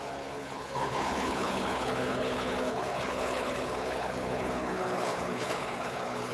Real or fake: fake